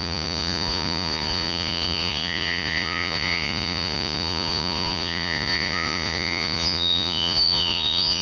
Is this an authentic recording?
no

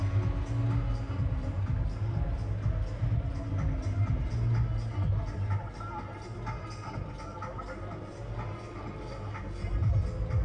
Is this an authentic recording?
yes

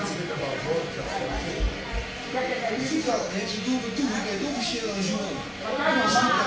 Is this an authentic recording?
yes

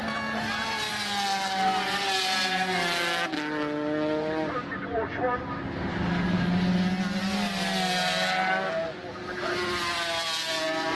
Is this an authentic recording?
yes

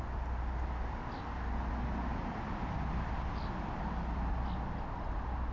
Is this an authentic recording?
yes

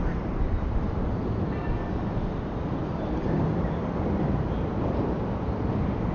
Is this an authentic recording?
yes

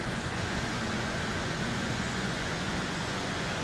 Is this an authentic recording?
no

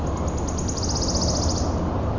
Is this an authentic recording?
yes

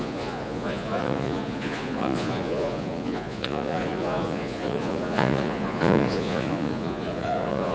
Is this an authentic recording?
no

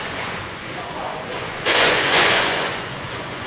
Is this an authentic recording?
no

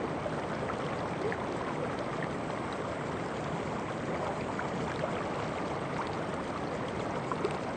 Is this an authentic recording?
yes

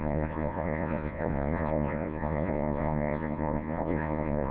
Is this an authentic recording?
no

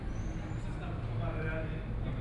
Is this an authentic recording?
yes